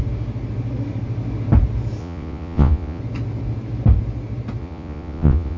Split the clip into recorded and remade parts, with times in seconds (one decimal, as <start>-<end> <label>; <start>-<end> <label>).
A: 0.0-2.0 recorded; 2.0-3.0 remade; 3.0-4.6 recorded; 4.6-5.6 remade